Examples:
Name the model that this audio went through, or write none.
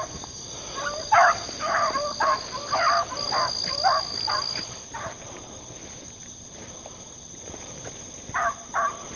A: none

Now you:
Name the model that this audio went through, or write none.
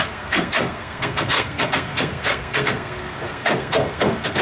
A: codec, SNAC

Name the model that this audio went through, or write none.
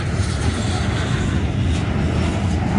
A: none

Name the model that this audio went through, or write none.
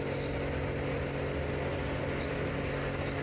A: none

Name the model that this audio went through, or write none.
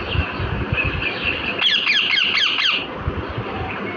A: none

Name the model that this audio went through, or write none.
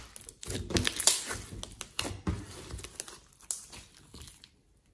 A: none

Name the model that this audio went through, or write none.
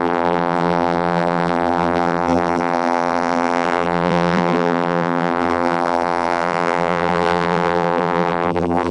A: vocoder, BigVGAN v2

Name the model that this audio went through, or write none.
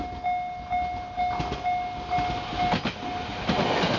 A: none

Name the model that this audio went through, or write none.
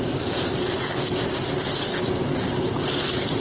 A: none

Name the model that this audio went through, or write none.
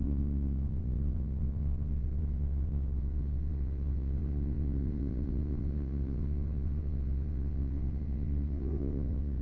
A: vocoder, WaveNeXt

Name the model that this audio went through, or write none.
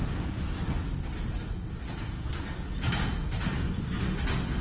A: none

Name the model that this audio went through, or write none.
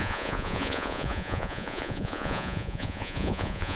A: vocoder, Vocos